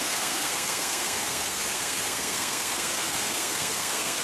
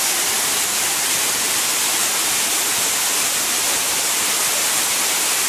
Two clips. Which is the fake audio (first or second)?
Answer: first